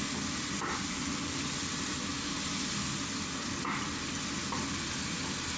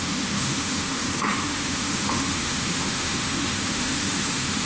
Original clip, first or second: first